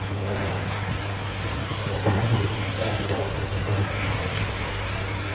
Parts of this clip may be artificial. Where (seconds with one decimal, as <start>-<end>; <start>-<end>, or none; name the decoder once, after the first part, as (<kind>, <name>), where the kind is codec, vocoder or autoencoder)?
0.0-5.3 (codec, SNAC)